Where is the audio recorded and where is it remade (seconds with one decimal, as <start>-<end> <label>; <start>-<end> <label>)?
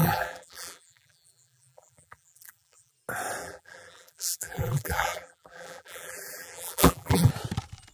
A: 0.0-2.9 remade; 2.9-3.4 recorded; 3.4-7.3 remade; 7.3-7.9 recorded